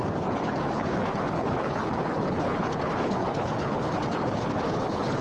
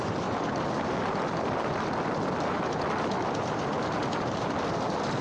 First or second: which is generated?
first